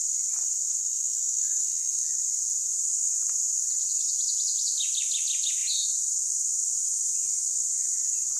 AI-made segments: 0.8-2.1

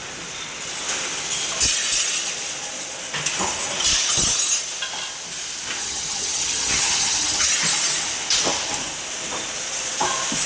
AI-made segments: 5.8-7.5

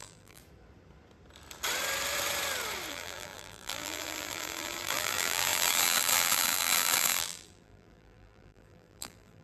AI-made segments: 0.0-0.4; 2.9-9.4

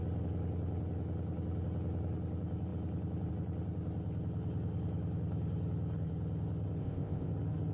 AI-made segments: 6.8-7.3

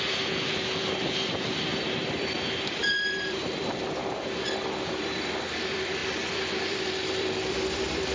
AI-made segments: 0.0-4.0; 4.9-6.0; 6.7-8.1

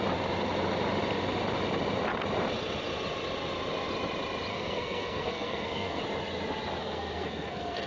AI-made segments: 4.5-6.0; 6.8-7.9